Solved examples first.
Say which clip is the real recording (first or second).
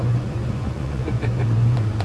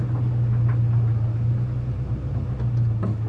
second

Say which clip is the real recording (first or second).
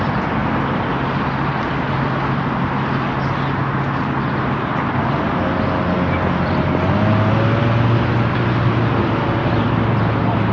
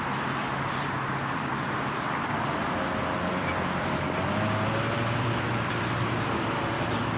first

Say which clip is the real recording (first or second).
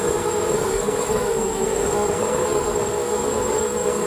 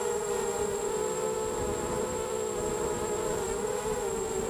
second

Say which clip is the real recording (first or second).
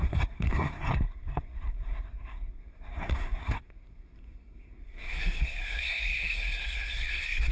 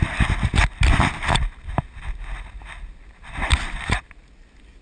second